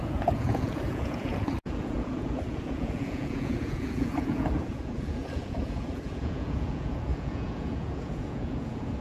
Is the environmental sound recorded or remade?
remade